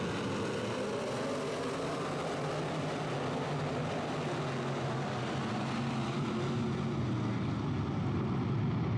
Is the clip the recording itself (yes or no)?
yes